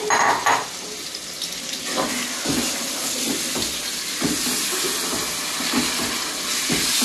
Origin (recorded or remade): recorded